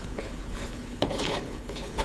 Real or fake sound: fake